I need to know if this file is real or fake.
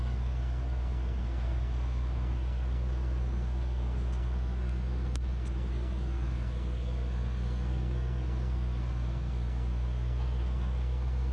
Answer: fake